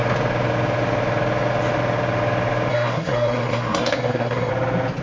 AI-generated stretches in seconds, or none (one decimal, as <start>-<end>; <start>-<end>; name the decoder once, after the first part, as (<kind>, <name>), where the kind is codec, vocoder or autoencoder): 2.7-4.5 (codec, SNAC)